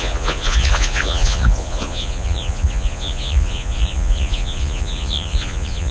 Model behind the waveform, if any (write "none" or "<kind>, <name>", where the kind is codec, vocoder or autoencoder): vocoder, Vocos